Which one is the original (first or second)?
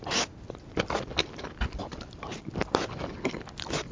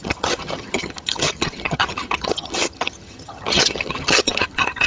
first